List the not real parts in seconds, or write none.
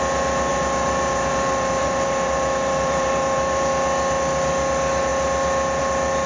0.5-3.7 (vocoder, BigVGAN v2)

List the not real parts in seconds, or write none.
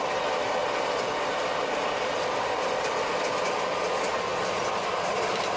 4.3-5.1 (vocoder, BigVGAN v2)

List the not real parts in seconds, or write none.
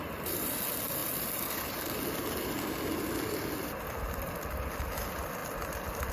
none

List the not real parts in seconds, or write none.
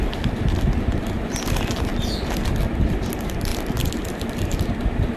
none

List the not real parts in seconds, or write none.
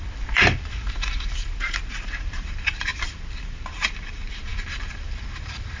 0.0-5.8 (vocoder, BigVGAN v2)